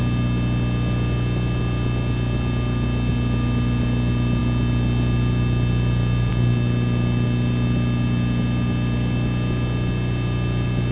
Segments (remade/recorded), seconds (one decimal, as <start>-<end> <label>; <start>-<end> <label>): 0.0-10.9 recorded